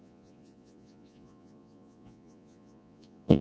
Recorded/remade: remade